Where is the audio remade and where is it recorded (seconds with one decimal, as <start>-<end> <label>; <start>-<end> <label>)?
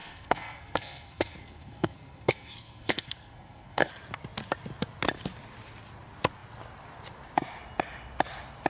0.0-3.9 remade; 3.9-8.7 recorded